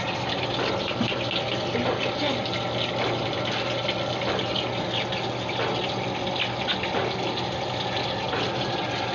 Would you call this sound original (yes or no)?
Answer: yes